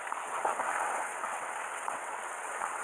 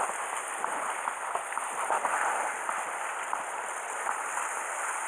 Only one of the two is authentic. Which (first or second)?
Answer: second